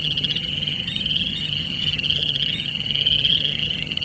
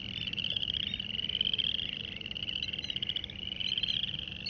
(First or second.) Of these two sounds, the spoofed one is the first